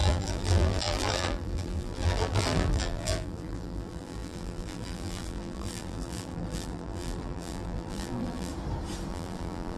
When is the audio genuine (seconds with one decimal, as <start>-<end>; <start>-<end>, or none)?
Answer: 8.5-9.1